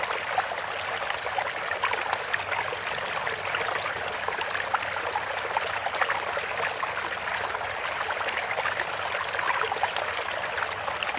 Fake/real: real